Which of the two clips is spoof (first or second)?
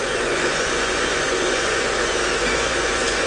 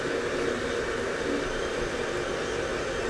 first